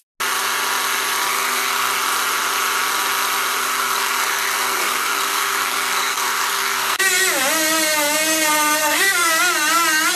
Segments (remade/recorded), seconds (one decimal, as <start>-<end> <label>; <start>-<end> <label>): 0.0-1.3 recorded; 1.3-1.9 remade; 1.9-3.6 recorded; 3.6-7.0 remade; 7.0-8.8 recorded; 8.8-9.3 remade; 9.3-10.2 recorded